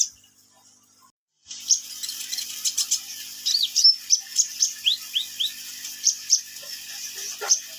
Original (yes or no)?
yes